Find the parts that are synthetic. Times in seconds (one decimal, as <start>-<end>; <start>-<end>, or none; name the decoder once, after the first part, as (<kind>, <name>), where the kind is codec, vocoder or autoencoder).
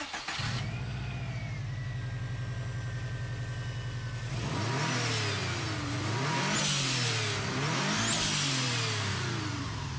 9.1-10.0 (vocoder, BigVGAN v2)